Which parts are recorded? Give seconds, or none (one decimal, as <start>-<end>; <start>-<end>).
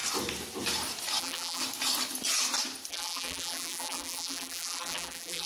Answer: 0.0-1.2; 1.6-2.9